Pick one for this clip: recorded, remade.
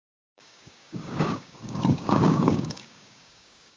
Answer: remade